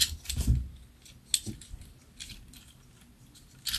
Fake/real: real